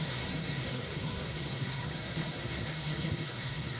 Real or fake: fake